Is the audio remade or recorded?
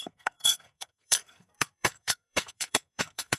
remade